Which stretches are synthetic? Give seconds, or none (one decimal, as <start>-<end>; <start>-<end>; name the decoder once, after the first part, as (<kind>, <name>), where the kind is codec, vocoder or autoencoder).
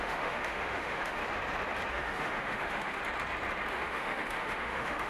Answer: 0.0-1.2 (autoencoder, DAC-VAE); 1.9-3.0; 3.7-5.1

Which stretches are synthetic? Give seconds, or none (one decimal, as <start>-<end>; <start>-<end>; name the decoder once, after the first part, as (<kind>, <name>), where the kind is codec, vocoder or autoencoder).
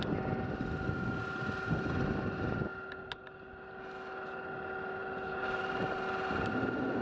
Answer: none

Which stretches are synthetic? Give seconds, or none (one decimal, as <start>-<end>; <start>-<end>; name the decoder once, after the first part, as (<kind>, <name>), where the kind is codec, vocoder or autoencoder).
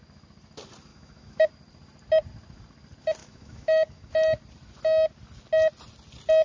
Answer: 0.9-1.5 (autoencoder, DAC-VAE); 3.2-4.1